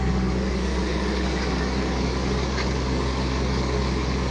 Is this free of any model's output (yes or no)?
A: no